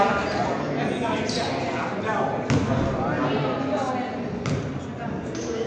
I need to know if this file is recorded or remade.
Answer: recorded